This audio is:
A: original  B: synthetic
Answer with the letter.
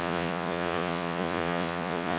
B